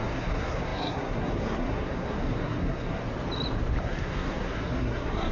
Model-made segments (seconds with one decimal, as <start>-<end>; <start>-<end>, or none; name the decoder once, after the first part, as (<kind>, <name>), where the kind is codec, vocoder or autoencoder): 0.0-3.0 (codec, SNAC); 3.8-5.3